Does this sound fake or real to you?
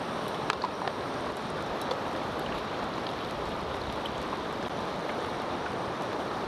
fake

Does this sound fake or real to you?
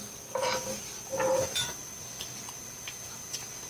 fake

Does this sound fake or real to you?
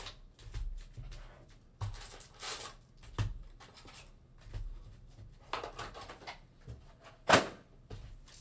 real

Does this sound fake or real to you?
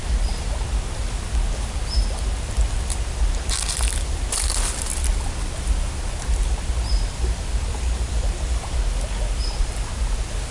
real